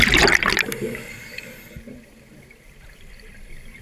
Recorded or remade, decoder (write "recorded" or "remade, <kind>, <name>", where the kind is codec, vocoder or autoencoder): recorded